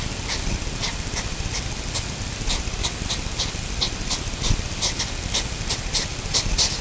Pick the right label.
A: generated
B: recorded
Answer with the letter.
B